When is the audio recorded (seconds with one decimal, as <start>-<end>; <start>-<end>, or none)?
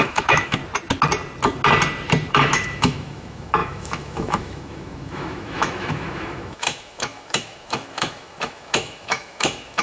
0.6-2.3